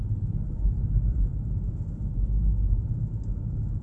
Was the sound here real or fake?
fake